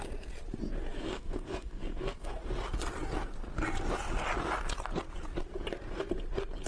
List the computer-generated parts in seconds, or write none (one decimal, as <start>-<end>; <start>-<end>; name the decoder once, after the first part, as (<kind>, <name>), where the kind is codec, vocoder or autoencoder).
0.9-2.4 (codec, SNAC)